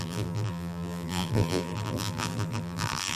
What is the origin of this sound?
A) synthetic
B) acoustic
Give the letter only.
A